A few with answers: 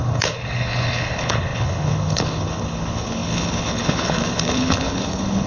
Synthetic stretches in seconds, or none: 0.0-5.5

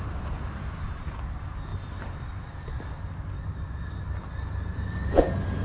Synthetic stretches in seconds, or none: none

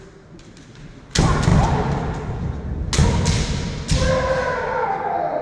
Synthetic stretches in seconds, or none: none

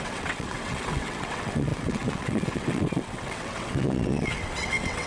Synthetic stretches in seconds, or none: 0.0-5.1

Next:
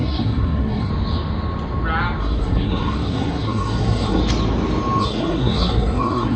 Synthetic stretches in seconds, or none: 0.0-0.9; 2.2-4.2; 5.0-6.4

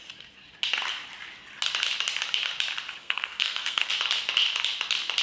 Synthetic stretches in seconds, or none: 3.0-3.9

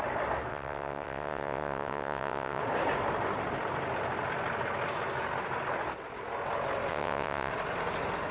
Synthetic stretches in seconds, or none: 0.5-2.6; 6.9-7.5